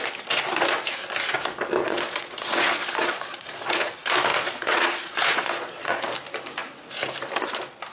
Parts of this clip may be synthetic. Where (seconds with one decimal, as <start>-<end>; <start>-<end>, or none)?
1.8-3.9; 4.3-6.1